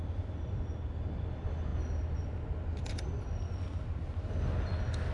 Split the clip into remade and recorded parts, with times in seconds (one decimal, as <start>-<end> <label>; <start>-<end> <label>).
0.0-5.1 recorded